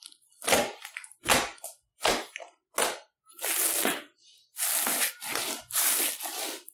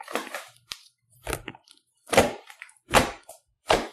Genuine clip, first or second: first